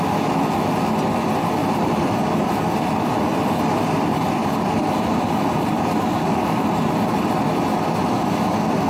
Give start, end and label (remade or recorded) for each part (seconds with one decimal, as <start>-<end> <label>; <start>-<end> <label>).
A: 0.0-1.6 recorded; 1.6-6.8 remade; 6.8-8.9 recorded